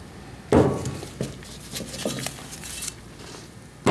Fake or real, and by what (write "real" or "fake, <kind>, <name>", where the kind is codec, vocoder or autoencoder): real